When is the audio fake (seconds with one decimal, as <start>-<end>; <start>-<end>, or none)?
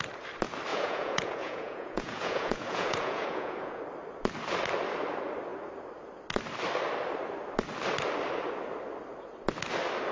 0.7-3.8